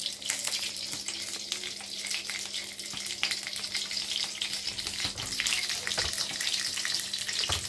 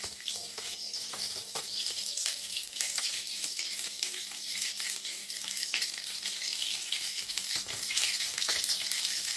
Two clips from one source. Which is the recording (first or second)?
first